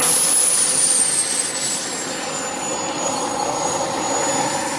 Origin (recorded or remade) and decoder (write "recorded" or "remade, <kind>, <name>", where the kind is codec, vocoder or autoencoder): recorded